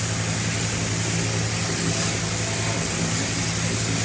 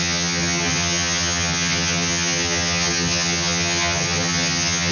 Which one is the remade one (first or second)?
second